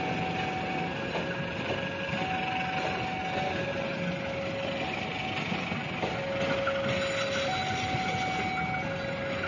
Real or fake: real